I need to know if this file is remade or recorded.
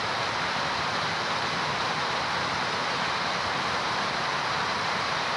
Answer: remade